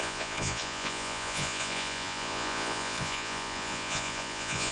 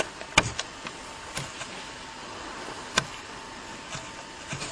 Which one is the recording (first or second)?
second